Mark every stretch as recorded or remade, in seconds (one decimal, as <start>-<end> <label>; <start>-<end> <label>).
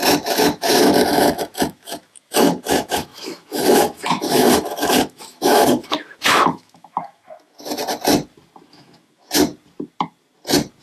0.0-7.8 remade; 7.8-8.7 recorded; 8.7-9.5 remade; 9.5-10.8 recorded